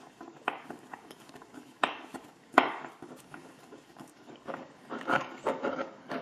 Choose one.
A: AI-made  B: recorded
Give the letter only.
A